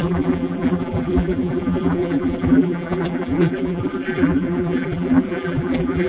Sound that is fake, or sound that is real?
fake